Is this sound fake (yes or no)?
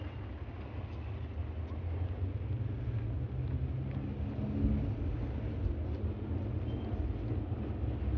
no